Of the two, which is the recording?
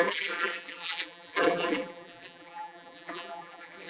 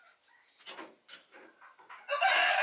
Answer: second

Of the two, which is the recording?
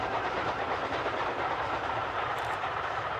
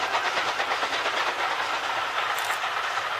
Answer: second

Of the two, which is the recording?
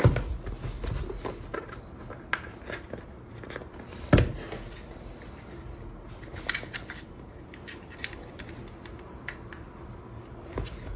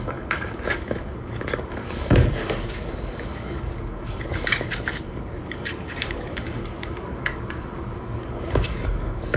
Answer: first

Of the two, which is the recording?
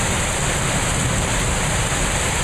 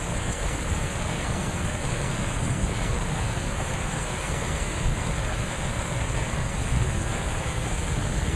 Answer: first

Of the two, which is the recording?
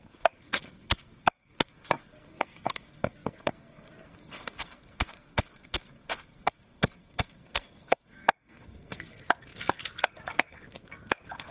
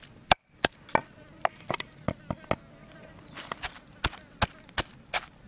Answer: second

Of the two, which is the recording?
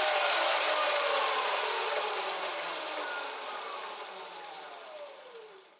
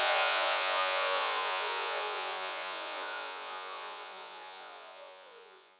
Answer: first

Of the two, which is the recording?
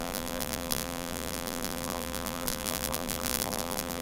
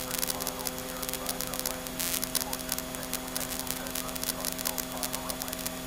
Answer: second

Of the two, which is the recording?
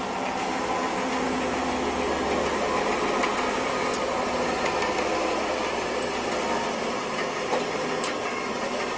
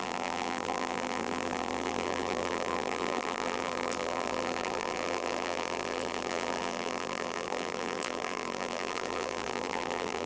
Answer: first